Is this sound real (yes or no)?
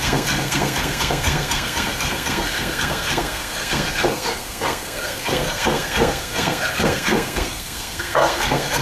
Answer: no